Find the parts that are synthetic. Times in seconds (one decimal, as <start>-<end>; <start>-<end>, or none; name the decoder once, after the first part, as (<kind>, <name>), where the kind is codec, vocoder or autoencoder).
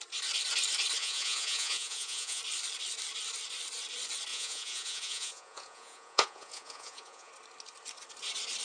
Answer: 1.0-2.4 (vocoder, Vocos); 4.3-7.3